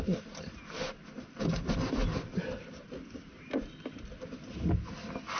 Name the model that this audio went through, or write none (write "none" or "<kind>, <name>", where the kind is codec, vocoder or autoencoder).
none